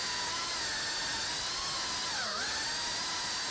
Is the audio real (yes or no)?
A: yes